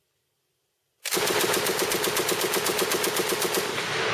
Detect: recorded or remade recorded